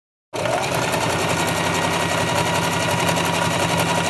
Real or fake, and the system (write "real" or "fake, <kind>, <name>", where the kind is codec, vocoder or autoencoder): real